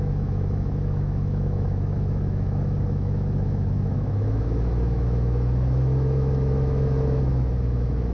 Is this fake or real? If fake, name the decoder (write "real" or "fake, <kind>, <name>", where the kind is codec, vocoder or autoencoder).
fake, autoencoder, DAC-VAE